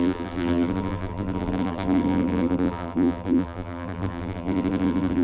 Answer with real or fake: fake